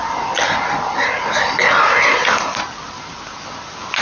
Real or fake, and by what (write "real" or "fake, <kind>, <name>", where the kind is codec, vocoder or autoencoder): real